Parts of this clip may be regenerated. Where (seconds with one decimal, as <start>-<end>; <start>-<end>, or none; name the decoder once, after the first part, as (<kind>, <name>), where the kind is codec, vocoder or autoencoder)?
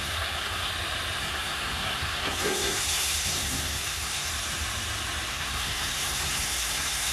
0.0-0.7 (codec, SNAC); 1.2-4.3; 5.3-7.1